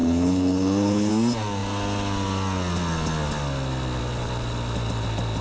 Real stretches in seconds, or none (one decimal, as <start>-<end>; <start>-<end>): 1.1-5.4